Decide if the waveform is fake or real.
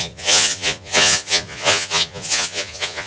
fake